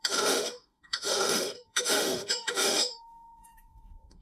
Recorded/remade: remade